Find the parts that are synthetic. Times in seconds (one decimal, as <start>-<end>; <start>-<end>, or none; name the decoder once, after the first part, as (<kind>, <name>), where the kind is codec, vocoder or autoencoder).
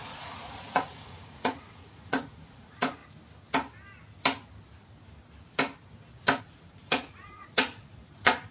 0.0-3.0 (vocoder, Vocos); 6.4-8.5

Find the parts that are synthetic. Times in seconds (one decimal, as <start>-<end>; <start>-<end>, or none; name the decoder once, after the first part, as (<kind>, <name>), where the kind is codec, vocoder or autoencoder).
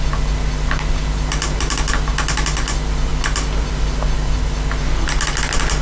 none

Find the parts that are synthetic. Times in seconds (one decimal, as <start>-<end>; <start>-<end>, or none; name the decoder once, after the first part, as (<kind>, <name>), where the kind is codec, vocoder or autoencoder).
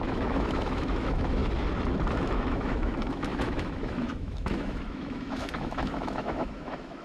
0.0-1.4 (autoencoder, DAC-VAE); 2.1-7.0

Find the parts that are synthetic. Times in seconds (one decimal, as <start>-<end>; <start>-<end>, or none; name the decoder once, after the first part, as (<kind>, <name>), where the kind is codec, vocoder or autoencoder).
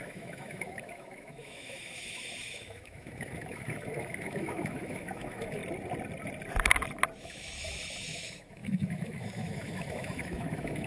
0.0-5.6 (autoencoder, DAC-VAE); 7.2-10.9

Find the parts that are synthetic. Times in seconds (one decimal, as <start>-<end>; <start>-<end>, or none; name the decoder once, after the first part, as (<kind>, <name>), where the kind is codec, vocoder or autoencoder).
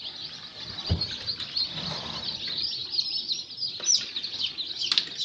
none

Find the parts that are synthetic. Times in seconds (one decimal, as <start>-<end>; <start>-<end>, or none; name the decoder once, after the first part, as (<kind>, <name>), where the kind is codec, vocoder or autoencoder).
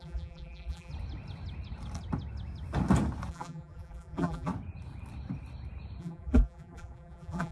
0.0-0.9 (vocoder, BigVGAN v2); 3.3-4.5; 6.0-7.5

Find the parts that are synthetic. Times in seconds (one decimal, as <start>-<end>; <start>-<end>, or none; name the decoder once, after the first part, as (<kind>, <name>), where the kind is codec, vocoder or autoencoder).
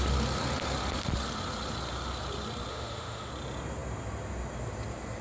2.7-3.3 (autoencoder, DAC-VAE)